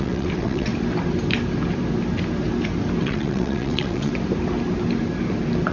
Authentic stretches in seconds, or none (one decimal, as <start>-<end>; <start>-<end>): 0.7-3.0; 4.1-5.7